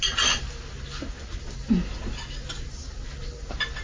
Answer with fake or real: real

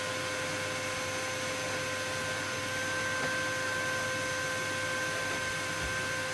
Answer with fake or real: real